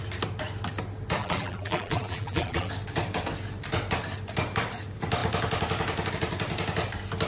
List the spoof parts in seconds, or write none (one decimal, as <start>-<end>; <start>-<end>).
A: 1.2-2.7